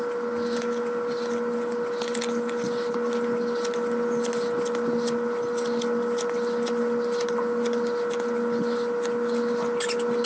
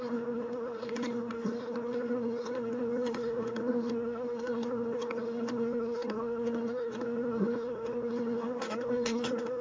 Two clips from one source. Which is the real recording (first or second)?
first